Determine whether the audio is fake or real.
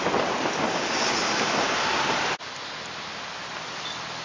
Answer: real